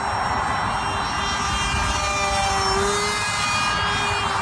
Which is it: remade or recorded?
recorded